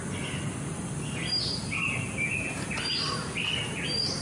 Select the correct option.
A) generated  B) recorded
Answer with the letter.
B